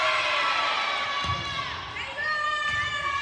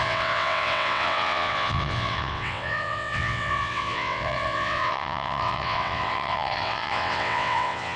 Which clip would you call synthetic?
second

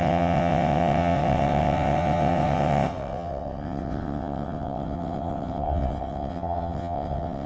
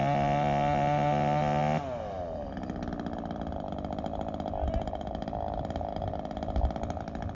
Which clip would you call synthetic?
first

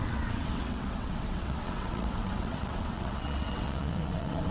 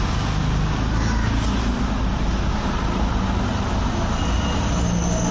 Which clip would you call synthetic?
first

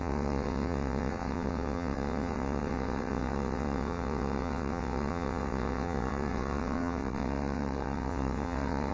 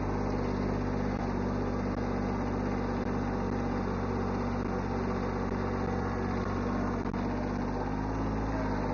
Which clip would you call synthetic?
first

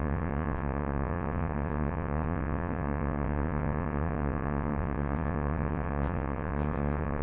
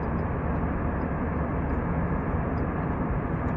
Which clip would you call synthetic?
first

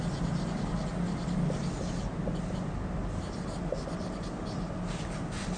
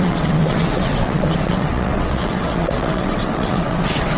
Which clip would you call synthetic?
second